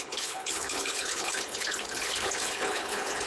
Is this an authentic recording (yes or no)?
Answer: no